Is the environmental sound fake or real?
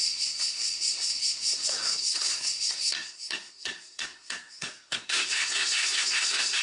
fake